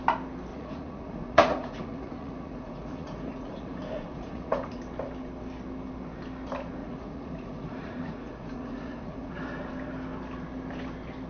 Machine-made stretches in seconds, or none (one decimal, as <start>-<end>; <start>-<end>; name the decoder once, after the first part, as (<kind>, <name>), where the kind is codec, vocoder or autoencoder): 0.5-4.8 (vocoder, Vocos); 6.8-9.3